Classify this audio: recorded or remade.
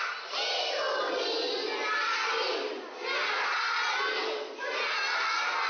recorded